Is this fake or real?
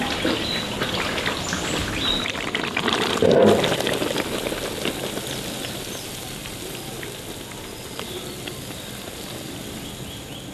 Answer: real